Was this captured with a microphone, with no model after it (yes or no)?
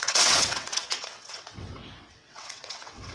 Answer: no